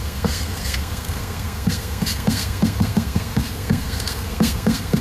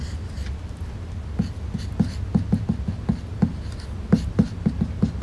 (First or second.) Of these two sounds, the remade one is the first